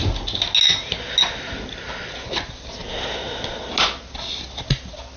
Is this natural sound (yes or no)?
yes